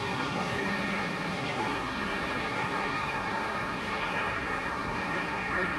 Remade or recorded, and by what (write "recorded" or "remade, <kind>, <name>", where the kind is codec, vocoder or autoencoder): remade, codec, SNAC